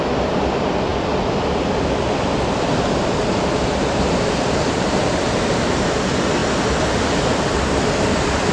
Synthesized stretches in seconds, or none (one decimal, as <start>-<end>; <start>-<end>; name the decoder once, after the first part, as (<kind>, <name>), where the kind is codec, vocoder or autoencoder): none